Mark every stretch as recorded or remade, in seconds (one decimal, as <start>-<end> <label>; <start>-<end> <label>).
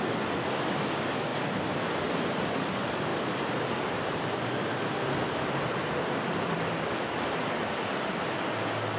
0.0-3.1 recorded; 3.1-6.9 remade; 6.9-9.0 recorded